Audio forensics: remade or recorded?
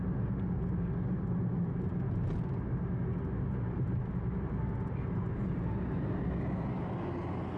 recorded